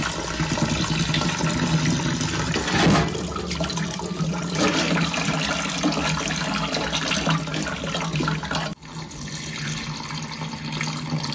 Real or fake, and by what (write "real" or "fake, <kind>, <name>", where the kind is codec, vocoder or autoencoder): real